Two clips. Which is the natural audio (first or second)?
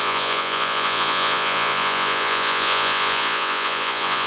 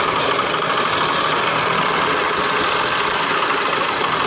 second